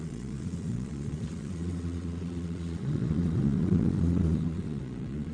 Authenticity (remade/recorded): remade